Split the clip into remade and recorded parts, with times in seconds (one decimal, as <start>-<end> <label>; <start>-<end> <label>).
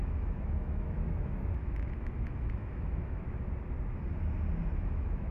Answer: 0.0-3.2 remade; 3.2-4.6 recorded; 4.6-5.3 remade